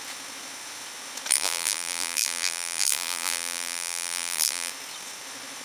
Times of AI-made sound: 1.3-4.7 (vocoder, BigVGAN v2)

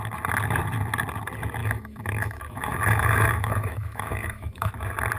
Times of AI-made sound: 1.6-4.7 (autoencoder, DAC-VAE)

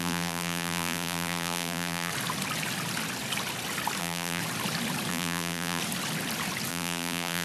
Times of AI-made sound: 0.0-2.1 (vocoder, BigVGAN v2); 4.0-4.4; 5.1-5.8; 6.7-7.4